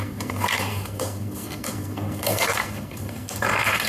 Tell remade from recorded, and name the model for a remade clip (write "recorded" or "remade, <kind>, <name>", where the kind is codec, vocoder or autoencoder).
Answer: remade, codec, SNAC